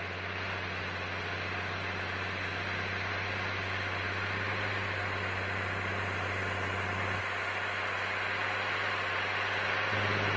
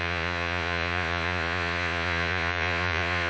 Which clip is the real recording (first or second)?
first